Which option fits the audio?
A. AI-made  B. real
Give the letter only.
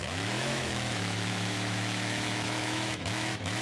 A